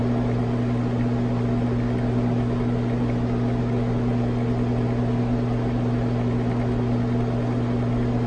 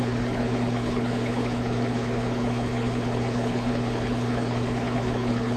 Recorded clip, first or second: first